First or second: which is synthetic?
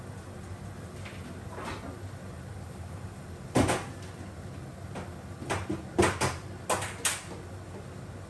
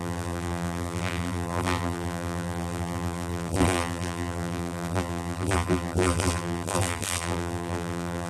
second